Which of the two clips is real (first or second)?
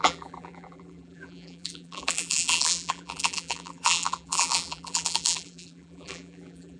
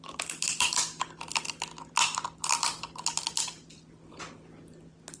second